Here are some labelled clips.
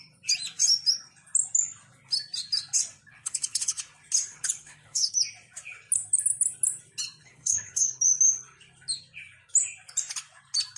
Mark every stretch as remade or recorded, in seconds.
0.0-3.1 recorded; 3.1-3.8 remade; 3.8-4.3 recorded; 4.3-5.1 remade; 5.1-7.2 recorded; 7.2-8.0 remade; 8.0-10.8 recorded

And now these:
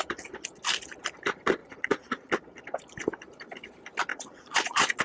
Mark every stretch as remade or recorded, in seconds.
0.0-1.6 recorded; 1.6-2.3 remade; 2.3-4.1 recorded; 4.1-5.0 remade

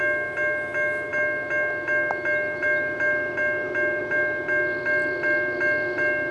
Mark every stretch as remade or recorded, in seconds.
0.0-6.3 recorded

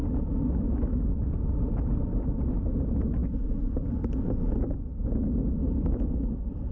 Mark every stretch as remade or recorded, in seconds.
0.0-1.3 remade; 1.3-6.7 recorded

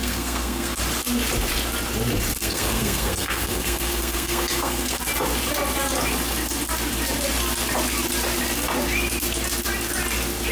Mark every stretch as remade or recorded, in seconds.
0.0-0.8 remade; 0.8-2.4 recorded; 2.4-5.0 remade; 5.0-10.5 recorded